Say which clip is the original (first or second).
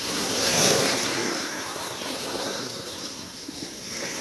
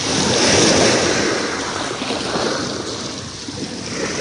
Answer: second